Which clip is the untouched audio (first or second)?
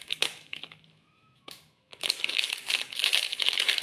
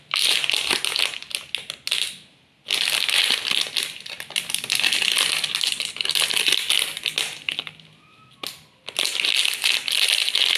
second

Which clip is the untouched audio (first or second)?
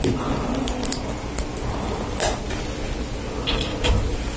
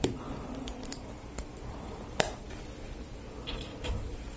first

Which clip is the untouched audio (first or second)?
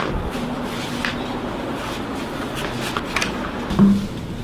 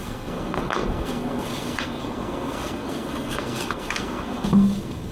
first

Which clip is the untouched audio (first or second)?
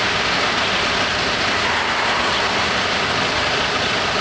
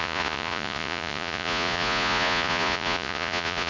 first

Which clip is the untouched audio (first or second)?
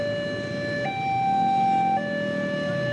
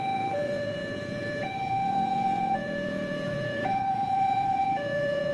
first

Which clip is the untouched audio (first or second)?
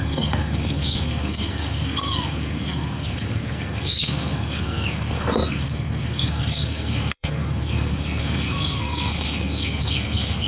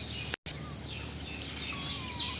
second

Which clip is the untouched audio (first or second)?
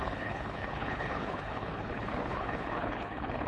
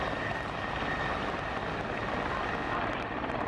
second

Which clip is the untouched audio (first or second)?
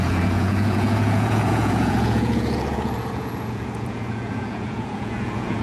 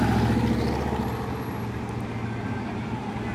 second